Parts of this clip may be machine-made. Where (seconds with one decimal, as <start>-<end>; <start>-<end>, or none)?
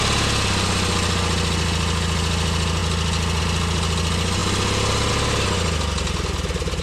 none